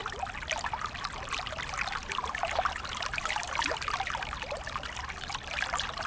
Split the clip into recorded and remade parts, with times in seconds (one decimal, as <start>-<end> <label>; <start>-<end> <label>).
0.0-6.1 remade